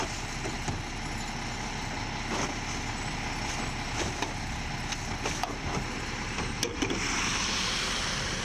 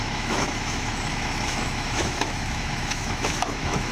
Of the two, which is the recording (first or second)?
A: first